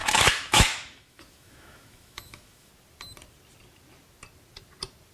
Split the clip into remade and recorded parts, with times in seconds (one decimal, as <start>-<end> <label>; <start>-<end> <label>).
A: 0.0-2.7 remade; 2.7-5.1 recorded